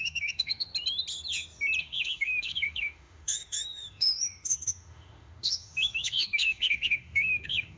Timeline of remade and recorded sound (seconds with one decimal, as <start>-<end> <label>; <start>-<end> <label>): 0.0-0.7 remade; 0.7-1.8 recorded; 1.8-7.8 remade

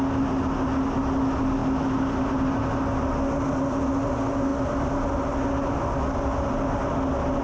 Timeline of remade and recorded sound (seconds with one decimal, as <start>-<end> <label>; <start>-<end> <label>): 0.0-7.4 recorded

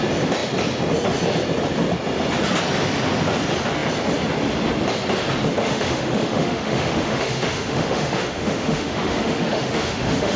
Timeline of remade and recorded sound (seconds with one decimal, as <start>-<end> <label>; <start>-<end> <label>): 0.0-5.6 recorded; 5.6-10.4 remade

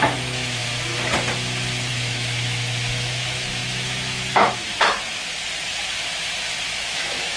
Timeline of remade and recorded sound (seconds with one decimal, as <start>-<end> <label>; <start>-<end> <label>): 0.0-0.6 remade; 0.6-1.9 recorded; 1.9-5.2 remade; 5.2-6.7 recorded; 6.7-7.4 remade

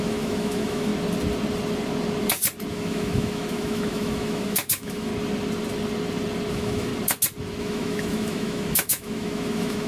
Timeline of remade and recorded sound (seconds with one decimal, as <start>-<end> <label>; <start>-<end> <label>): 0.0-0.9 remade; 0.9-2.7 recorded; 2.7-5.1 remade; 5.1-6.5 recorded; 6.5-6.9 remade; 6.9-7.6 recorded; 7.6-9.9 remade